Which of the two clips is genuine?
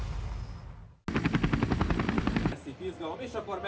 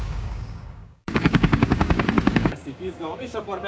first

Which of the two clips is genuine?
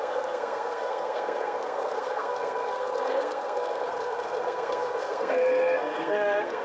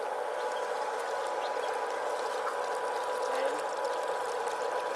second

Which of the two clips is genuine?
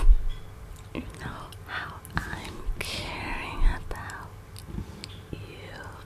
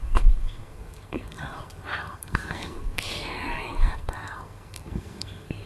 first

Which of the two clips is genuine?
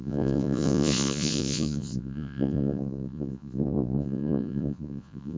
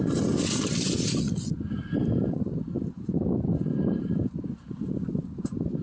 second